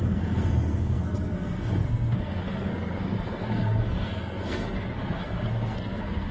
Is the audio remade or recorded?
remade